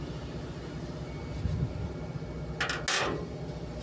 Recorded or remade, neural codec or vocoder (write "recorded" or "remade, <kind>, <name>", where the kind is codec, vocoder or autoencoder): recorded